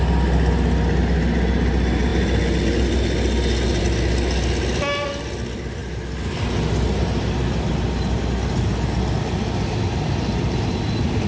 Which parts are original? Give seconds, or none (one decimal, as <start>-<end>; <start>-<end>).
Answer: 0.0-11.3